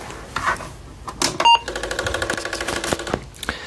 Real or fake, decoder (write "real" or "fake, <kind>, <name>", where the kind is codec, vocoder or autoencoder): real